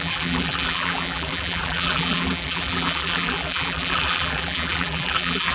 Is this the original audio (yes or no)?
no